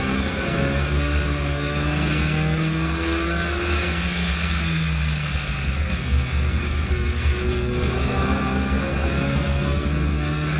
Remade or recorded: remade